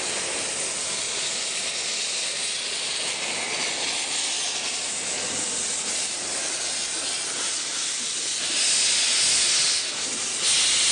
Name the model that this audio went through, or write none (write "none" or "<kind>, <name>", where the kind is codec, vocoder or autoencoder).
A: none